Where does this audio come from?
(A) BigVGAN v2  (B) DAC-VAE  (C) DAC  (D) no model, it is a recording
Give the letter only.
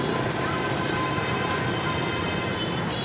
D